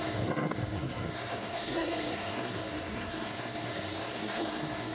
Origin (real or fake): fake